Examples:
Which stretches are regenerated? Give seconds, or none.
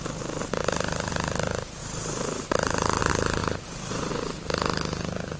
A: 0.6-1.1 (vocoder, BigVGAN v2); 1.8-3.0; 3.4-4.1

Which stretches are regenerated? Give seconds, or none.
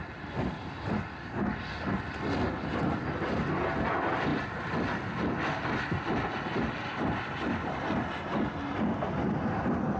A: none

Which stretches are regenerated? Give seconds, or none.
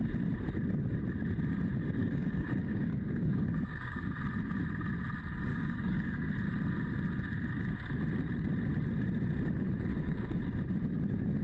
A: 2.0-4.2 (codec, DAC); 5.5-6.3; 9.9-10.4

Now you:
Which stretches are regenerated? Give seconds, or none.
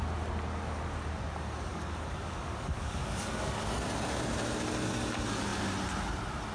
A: 1.7-3.6 (codec, DAC)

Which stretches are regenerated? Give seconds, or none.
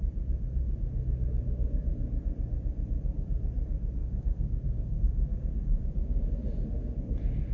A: 4.0-6.3 (codec, DAC)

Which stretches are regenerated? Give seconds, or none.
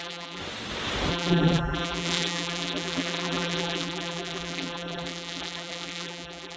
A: 0.0-0.4 (vocoder, BigVGAN v2); 1.1-6.6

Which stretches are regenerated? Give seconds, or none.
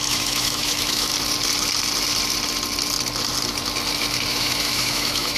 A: 0.0-1.1 (autoencoder, DAC-VAE); 4.3-5.4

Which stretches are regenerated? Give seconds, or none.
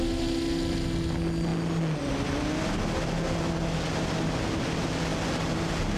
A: none